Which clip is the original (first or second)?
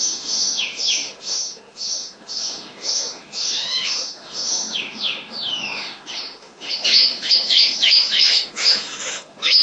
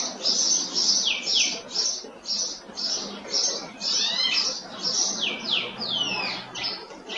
second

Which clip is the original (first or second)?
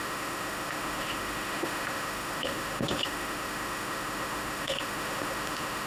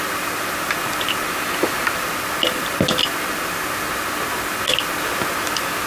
second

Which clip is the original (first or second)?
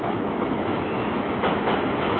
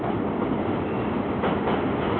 second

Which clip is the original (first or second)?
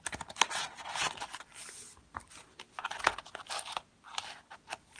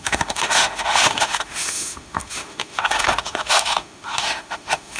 first